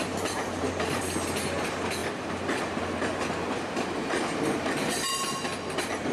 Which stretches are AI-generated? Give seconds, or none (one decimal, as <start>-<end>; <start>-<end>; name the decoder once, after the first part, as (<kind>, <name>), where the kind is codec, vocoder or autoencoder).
0.0-1.0 (vocoder, BigVGAN v2); 2.0-2.8